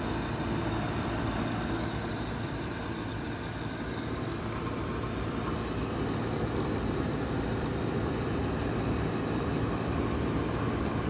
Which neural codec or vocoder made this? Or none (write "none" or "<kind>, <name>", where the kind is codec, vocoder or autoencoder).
none